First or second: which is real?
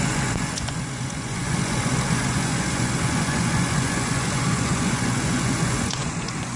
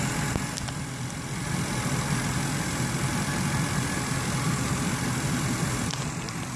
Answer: second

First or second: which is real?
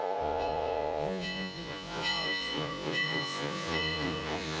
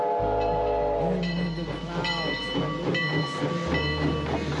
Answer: second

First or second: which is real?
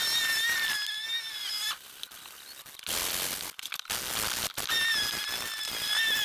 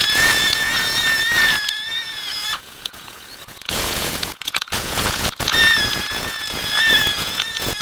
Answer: first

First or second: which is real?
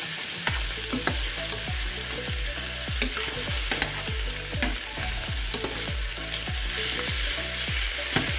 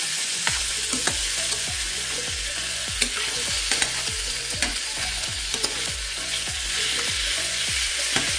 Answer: first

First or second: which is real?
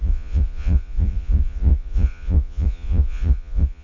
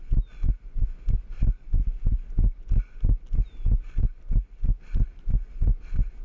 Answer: second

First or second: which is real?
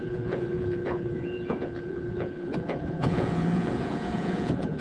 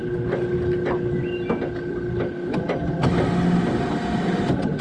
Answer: second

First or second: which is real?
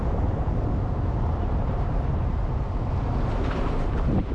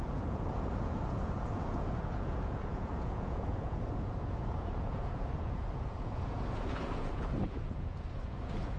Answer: first